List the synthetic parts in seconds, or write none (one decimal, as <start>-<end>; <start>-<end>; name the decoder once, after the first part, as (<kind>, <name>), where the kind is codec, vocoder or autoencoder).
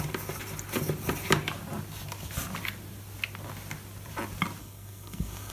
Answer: 4.6-5.5 (codec, SNAC)